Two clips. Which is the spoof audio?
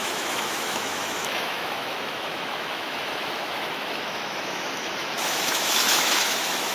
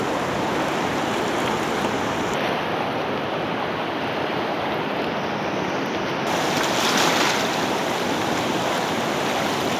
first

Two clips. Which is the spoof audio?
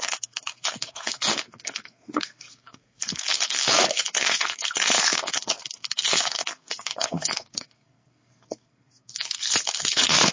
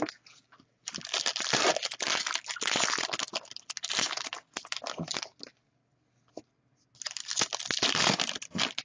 first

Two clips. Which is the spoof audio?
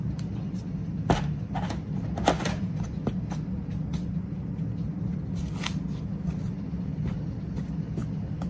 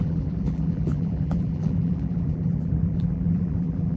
second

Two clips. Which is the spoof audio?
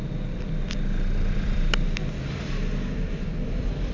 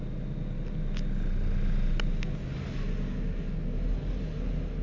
first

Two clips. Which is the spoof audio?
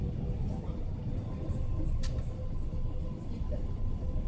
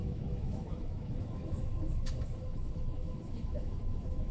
second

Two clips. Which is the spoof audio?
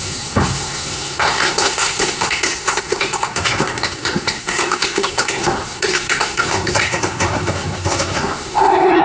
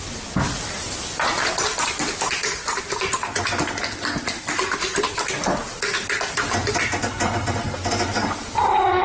first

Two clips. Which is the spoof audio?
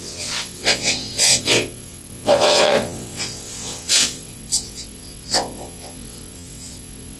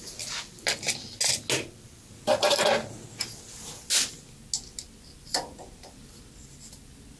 first